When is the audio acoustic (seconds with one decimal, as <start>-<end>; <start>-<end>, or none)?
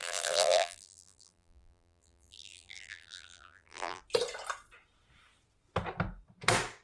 4.0-6.8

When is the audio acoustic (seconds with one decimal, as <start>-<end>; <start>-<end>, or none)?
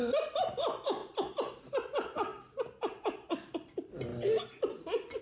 1.0-1.7; 2.3-3.0; 4.1-5.2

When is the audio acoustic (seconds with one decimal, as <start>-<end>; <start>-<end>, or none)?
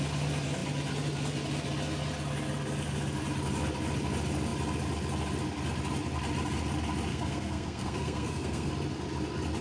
0.0-7.1; 8.7-9.6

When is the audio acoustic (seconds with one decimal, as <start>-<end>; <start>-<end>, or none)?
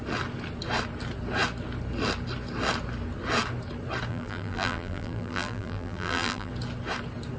0.0-4.1; 6.5-7.4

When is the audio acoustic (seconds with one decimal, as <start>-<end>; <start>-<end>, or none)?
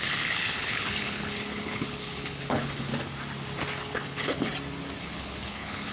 2.9-3.9; 4.5-5.0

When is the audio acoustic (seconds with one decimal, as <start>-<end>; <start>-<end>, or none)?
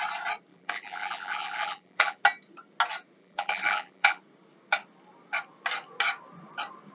0.0-0.5; 2.2-3.2; 4.2-6.9